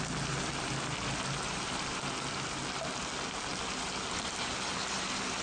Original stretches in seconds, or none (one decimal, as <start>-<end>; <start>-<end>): 0.0-5.4